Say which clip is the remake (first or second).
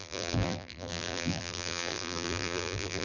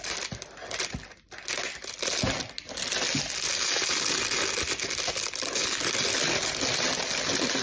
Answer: first